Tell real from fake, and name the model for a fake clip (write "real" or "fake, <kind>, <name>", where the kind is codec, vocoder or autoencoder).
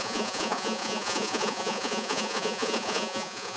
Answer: fake, vocoder, Vocos